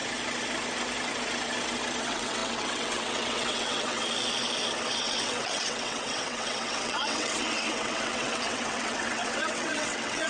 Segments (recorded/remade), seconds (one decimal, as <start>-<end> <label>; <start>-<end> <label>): 0.0-2.0 recorded; 2.0-4.0 remade; 4.0-4.9 recorded; 4.9-10.3 remade